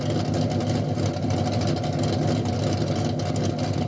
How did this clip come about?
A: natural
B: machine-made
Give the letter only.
A